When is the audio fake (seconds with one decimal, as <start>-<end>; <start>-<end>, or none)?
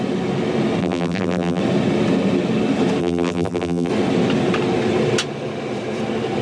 0.8-1.6; 3.0-3.9